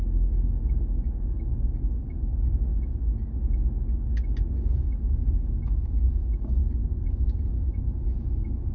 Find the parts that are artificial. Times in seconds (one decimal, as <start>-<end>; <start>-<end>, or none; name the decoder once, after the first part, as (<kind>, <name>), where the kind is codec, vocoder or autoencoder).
0.0-2.7 (codec, DAC); 4.5-6.6; 7.1-8.7

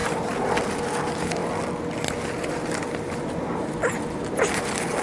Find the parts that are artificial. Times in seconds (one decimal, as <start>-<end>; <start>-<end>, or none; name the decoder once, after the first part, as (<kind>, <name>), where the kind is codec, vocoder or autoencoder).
0.0-0.5 (vocoder, BigVGAN v2)

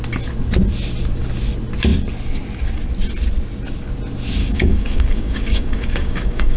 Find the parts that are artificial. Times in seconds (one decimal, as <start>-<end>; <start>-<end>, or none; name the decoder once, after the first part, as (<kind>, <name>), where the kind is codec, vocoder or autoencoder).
4.4-6.6 (codec, DAC)

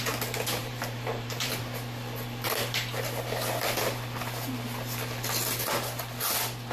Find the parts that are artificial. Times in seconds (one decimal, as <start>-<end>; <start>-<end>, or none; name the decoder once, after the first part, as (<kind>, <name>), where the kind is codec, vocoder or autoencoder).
0.6-1.6 (vocoder, BigVGAN v2)

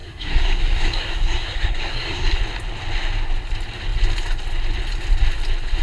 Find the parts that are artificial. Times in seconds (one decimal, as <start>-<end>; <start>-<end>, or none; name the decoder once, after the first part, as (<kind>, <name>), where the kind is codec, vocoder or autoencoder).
0.0-2.4 (codec, SNAC)